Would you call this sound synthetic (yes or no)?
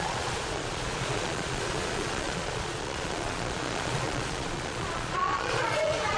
yes